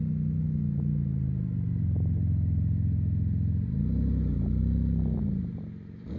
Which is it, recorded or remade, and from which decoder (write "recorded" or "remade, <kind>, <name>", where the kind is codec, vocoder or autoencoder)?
recorded